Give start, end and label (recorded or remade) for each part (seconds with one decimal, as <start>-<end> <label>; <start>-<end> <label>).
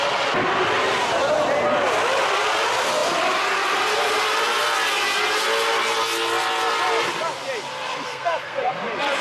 0.0-7.9 recorded; 7.9-8.7 remade; 8.7-9.2 recorded